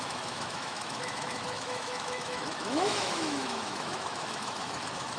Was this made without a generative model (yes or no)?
no